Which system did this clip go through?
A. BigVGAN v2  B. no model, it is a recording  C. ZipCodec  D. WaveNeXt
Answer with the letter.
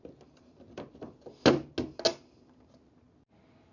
B